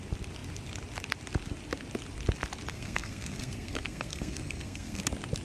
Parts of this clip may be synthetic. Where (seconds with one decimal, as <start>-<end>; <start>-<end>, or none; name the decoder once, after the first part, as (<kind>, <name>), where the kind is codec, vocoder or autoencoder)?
2.7-5.0 (codec, SNAC)